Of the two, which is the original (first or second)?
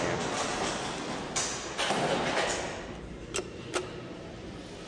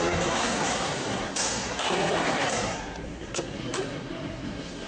first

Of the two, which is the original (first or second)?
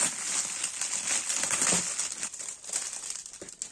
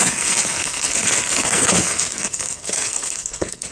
first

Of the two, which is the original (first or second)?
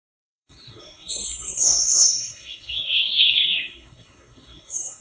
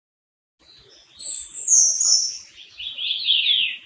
second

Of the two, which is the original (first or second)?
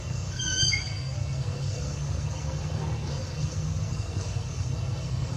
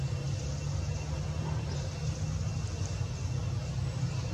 second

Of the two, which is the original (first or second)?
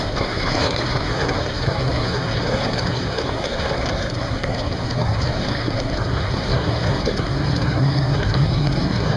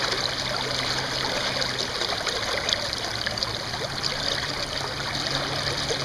second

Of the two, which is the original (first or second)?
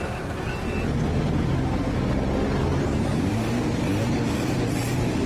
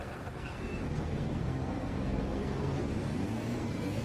first